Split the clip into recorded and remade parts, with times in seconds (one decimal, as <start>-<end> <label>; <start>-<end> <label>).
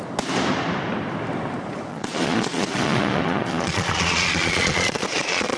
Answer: 0.0-1.9 recorded; 1.9-5.6 remade